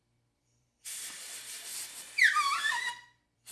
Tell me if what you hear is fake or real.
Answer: fake